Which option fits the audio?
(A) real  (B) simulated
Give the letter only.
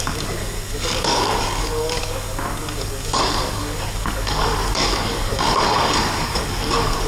B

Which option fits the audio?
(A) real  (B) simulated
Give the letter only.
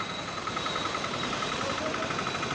B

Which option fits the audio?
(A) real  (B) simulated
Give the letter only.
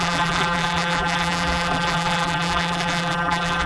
B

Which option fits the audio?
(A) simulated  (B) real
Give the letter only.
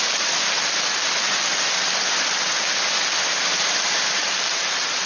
B